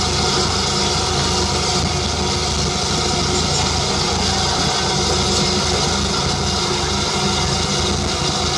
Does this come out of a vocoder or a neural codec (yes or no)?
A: no